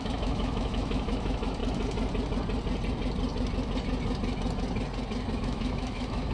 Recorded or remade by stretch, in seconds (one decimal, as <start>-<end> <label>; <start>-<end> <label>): 0.0-1.6 remade; 1.6-5.4 recorded; 5.4-6.3 remade